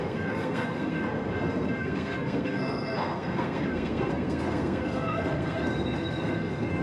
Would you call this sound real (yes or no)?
no